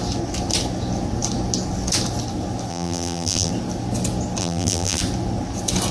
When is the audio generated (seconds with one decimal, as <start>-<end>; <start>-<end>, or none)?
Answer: 2.7-3.5; 4.4-5.0